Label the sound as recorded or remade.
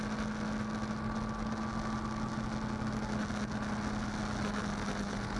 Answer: recorded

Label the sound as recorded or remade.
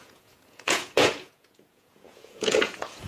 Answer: remade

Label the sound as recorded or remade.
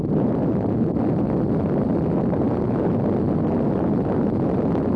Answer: recorded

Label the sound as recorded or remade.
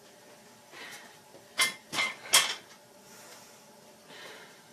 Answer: recorded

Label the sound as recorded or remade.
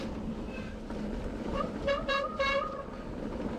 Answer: recorded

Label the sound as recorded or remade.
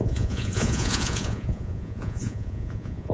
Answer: remade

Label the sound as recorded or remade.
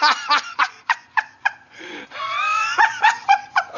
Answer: remade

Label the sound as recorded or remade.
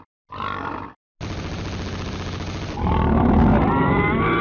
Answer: recorded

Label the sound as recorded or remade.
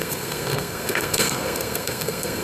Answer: remade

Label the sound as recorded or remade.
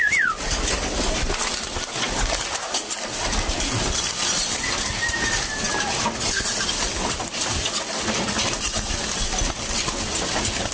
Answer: recorded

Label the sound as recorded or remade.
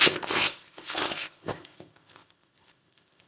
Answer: remade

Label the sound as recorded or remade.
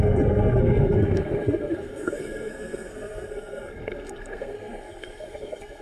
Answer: remade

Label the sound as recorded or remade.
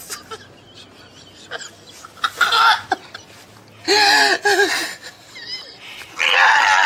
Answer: recorded